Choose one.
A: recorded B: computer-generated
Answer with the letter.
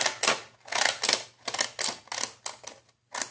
A